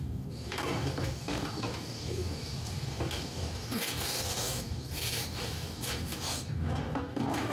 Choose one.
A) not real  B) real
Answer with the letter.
A